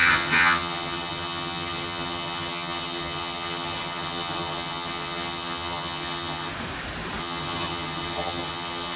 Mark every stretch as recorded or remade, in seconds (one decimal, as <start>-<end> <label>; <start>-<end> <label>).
0.0-6.5 remade; 6.5-7.2 recorded; 7.2-9.0 remade